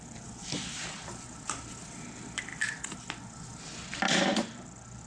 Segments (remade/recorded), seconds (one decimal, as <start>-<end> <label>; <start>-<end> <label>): 0.0-5.1 recorded